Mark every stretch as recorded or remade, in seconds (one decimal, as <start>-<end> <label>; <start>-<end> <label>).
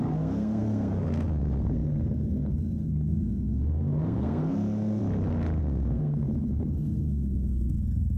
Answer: 0.0-5.0 remade; 5.0-5.6 recorded; 5.6-8.2 remade